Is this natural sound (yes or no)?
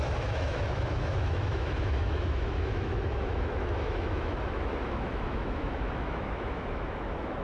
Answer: no